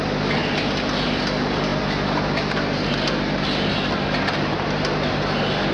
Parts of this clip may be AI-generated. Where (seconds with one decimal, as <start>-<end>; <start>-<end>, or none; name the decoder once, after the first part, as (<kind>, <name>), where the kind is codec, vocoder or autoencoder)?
none